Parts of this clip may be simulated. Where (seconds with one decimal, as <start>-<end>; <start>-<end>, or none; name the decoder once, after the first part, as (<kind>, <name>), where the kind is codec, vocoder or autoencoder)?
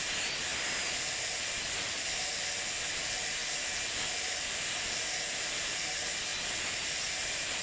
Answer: none